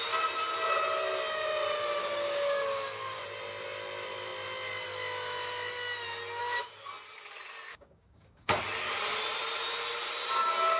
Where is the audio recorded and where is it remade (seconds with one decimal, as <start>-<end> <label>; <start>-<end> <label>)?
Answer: 0.0-2.0 recorded; 2.0-3.2 remade; 3.2-7.7 recorded; 7.7-8.6 remade; 8.6-10.8 recorded